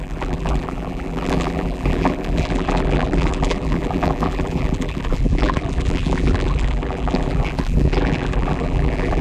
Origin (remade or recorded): remade